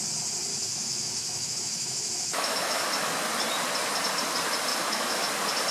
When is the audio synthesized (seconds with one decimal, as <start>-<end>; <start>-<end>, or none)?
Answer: 0.5-2.8; 4.7-5.3